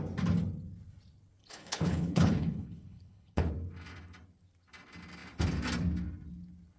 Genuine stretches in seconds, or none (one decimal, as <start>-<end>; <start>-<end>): 0.0-1.4; 3.5-6.8